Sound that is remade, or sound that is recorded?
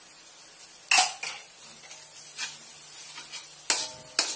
recorded